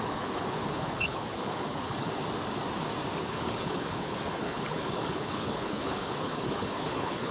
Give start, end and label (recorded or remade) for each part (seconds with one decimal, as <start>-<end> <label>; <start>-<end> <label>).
0.0-2.2 remade; 2.2-3.2 recorded; 3.2-7.3 remade